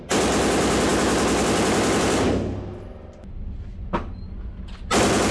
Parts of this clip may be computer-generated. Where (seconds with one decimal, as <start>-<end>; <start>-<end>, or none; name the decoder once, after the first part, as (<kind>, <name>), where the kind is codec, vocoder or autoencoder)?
3.4-3.9 (vocoder, BigVGAN v2)